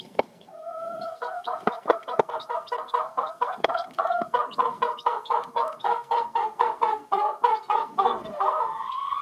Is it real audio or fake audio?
fake